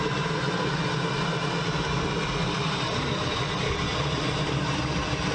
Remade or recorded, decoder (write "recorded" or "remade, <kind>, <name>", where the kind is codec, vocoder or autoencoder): recorded